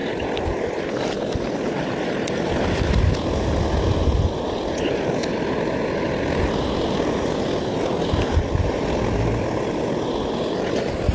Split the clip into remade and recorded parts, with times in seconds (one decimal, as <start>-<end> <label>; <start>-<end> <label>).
0.0-11.1 recorded

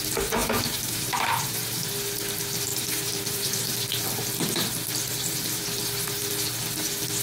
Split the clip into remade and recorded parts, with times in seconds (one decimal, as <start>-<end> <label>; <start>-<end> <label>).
0.0-0.4 recorded; 0.4-1.9 remade; 1.9-2.7 recorded; 2.7-3.9 remade; 3.9-5.1 recorded; 5.1-5.8 remade; 5.8-7.2 recorded

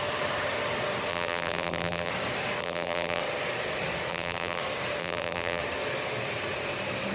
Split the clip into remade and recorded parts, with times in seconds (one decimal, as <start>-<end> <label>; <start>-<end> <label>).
0.0-1.1 recorded; 1.1-2.1 remade; 2.1-2.6 recorded; 2.6-3.2 remade; 3.2-4.1 recorded; 4.1-4.6 remade; 4.6-5.0 recorded; 5.0-5.6 remade; 5.6-7.1 recorded

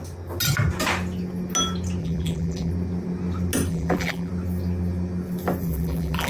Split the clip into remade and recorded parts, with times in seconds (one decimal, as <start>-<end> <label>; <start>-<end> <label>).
0.0-2.0 recorded; 2.0-2.7 remade; 2.7-3.7 recorded; 3.7-4.3 remade; 4.3-5.6 recorded; 5.6-6.3 remade

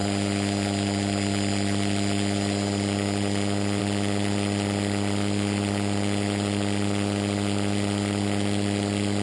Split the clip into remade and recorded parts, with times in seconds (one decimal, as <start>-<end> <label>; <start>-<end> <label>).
0.0-9.2 recorded

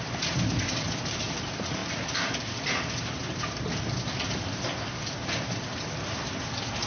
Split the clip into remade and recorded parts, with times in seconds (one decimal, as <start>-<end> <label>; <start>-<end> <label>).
0.0-6.9 recorded

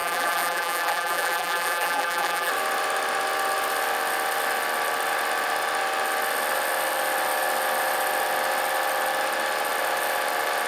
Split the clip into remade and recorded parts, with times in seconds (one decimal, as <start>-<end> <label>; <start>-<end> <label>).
0.0-2.5 remade; 2.5-10.7 recorded

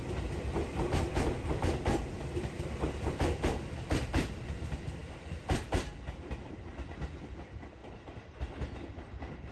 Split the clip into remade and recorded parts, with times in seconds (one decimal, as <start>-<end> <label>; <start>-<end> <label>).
0.0-9.5 recorded